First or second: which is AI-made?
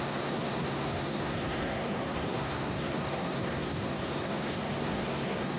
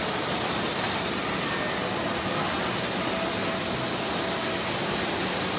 first